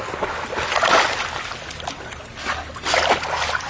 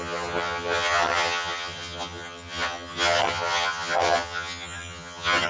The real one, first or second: first